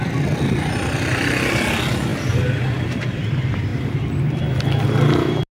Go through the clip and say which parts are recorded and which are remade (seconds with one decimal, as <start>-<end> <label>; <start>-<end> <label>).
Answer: 0.0-2.1 recorded; 2.1-3.1 remade; 3.1-5.5 recorded

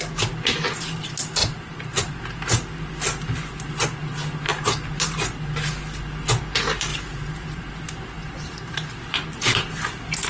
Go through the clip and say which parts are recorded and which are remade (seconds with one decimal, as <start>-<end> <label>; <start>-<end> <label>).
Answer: 0.0-1.4 recorded; 1.4-2.2 remade; 2.2-6.9 recorded; 6.9-8.9 remade; 8.9-10.3 recorded

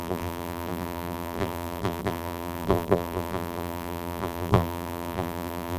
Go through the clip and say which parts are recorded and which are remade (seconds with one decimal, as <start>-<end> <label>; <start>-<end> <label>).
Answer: 0.0-5.8 remade

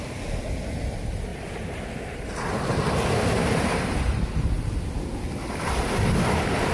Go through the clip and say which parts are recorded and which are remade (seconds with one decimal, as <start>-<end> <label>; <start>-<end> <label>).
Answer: 0.0-1.3 recorded; 1.3-1.8 remade; 1.8-3.4 recorded; 3.4-4.7 remade; 4.7-6.7 recorded

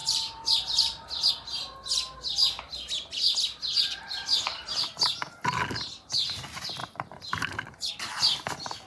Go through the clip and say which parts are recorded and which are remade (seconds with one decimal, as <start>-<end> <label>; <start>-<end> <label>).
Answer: 0.0-1.3 remade; 1.3-3.7 recorded; 3.7-4.7 remade; 4.7-6.8 recorded; 6.8-7.9 remade; 7.9-8.9 recorded

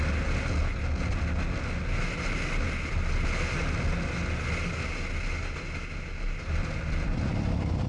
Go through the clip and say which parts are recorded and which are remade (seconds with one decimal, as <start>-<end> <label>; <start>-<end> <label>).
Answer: 0.0-6.6 recorded; 6.6-7.9 remade